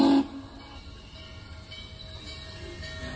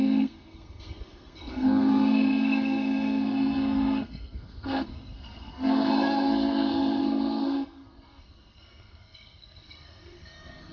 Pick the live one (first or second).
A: first